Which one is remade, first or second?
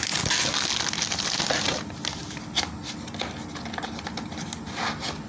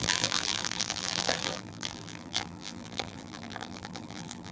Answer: second